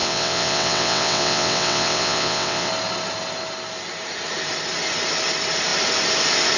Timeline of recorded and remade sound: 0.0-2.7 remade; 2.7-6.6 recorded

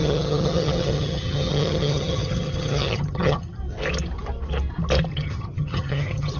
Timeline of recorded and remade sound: 0.0-3.6 remade; 3.6-5.1 recorded; 5.1-6.4 remade